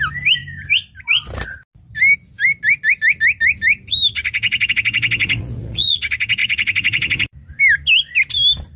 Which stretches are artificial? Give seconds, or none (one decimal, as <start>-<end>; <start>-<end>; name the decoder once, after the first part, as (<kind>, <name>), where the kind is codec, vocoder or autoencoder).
5.2-6.0 (vocoder, Vocos); 6.4-7.3